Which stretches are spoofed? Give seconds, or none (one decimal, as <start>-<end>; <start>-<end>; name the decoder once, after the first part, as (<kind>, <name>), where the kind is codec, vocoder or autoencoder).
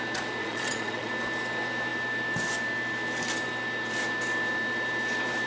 0.4-1.1 (vocoder, Vocos)